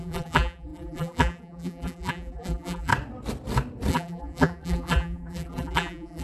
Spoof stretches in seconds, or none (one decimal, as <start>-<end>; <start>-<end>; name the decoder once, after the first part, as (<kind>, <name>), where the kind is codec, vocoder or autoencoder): 0.0-2.9 (vocoder, BigVGAN v2); 3.9-6.2

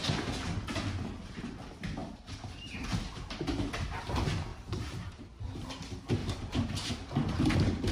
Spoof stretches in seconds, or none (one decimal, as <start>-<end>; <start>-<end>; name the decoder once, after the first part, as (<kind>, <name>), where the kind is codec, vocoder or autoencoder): 2.0-3.6 (vocoder, BigVGAN v2); 4.5-5.7; 6.2-6.9

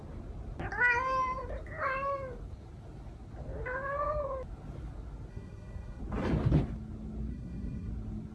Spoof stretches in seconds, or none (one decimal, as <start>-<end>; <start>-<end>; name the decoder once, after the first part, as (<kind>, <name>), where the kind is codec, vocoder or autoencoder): 5.3-6.0 (codec, SNAC); 7.3-7.9